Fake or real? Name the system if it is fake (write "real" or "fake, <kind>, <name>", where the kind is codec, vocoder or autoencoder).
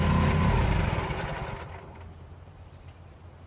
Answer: real